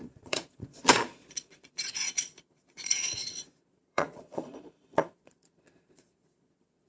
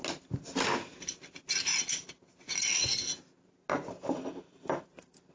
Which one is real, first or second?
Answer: second